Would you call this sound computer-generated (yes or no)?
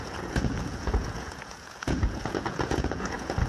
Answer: yes